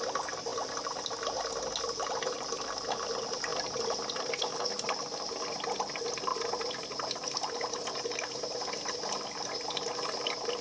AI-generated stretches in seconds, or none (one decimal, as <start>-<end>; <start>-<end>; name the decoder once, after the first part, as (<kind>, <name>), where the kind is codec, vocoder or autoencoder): none